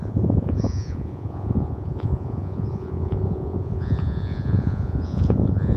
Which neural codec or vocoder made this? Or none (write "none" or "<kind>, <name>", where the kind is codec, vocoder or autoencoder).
vocoder, Vocos